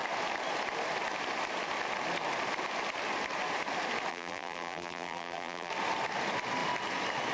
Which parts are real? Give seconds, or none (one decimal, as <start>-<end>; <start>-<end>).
0.0-4.1; 5.7-7.3